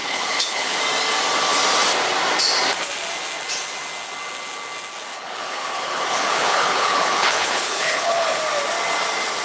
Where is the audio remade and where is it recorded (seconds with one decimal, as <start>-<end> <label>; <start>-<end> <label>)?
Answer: 0.0-0.8 remade; 0.8-5.1 recorded; 5.1-8.4 remade; 8.4-9.4 recorded